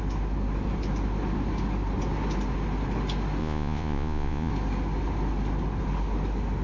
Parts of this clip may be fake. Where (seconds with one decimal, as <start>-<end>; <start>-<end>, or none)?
3.4-4.5